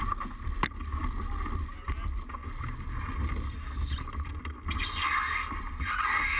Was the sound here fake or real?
real